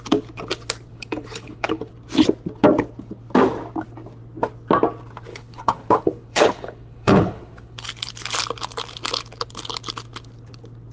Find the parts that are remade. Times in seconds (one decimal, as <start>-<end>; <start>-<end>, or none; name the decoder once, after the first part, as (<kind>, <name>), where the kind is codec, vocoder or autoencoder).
0.9-1.9 (codec, HILCodec); 5.3-7.9